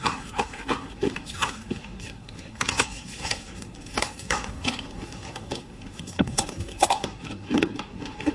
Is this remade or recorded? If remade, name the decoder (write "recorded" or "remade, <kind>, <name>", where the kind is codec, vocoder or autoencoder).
remade, codec, SNAC